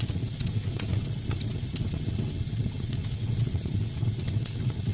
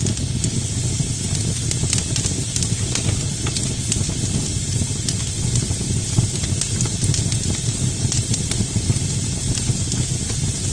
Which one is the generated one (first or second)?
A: first